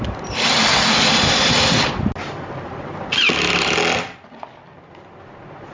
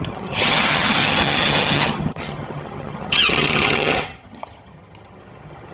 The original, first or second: first